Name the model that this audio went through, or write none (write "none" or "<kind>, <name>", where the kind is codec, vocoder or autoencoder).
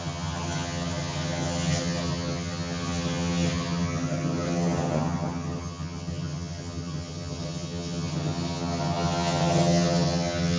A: vocoder, HiFi-GAN